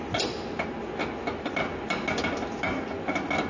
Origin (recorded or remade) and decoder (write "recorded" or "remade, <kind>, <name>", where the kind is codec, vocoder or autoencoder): recorded